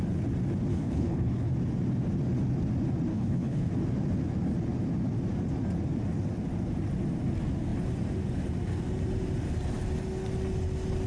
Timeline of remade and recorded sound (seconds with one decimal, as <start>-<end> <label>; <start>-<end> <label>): 0.0-0.7 recorded; 0.7-1.5 remade; 1.5-3.1 recorded; 3.1-3.7 remade; 3.7-11.1 recorded